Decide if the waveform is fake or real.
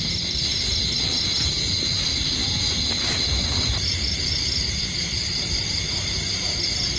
real